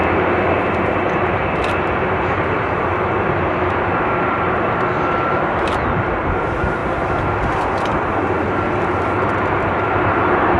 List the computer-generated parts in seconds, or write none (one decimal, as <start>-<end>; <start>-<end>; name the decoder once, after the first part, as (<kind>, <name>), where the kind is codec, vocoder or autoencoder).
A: none